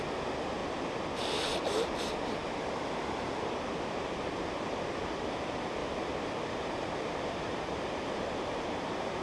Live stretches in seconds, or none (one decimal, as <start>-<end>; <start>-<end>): 0.0-5.8